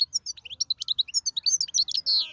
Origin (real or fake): real